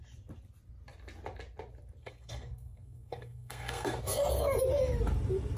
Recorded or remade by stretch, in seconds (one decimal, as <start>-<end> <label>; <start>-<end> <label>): 0.0-2.0 recorded; 2.0-4.3 remade; 4.3-5.6 recorded